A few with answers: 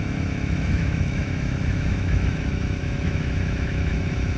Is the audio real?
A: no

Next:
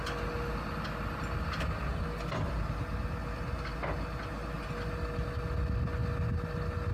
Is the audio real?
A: yes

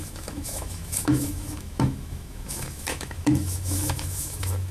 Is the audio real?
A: no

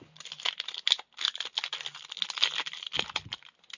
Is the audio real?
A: yes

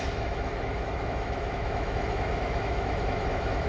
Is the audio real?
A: no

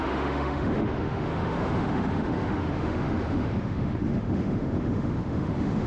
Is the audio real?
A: no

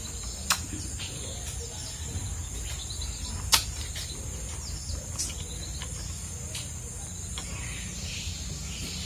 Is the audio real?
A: yes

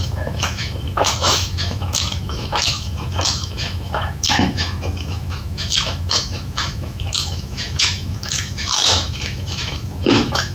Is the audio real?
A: no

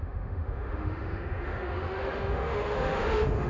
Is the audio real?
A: no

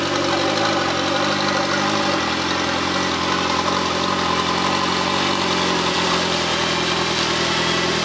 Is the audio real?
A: yes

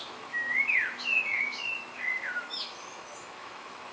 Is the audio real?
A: no